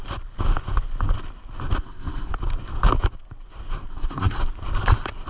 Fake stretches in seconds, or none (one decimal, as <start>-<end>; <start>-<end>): 1.8-2.3; 3.9-4.4

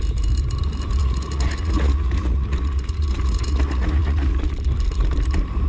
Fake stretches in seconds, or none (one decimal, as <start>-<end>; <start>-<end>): 1.0-4.4

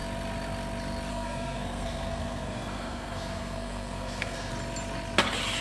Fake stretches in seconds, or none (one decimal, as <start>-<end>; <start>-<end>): 1.1-4.5

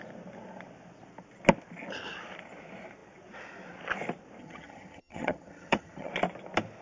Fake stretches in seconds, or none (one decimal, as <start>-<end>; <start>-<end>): 4.4-6.1